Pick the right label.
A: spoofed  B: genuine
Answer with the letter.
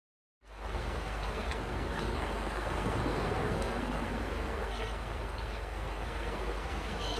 A